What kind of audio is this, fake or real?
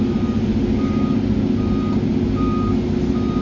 real